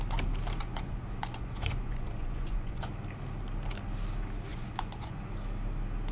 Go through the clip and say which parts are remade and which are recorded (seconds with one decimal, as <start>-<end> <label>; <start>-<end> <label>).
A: 0.0-0.6 recorded; 0.6-2.9 remade; 2.9-4.5 recorded; 4.5-5.2 remade; 5.2-6.1 recorded